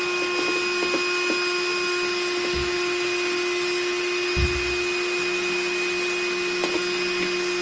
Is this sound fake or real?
real